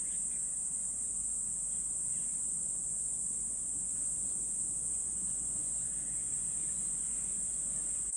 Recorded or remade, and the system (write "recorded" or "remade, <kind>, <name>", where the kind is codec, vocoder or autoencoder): remade, vocoder, Vocos